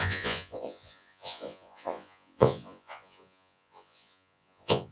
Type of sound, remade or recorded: remade